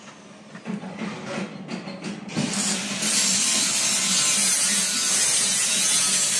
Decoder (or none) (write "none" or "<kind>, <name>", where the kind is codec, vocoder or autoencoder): none